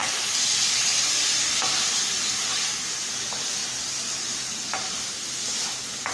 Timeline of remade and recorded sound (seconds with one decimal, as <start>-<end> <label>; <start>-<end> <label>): 0.0-2.5 remade; 2.5-3.1 recorded; 3.1-6.1 remade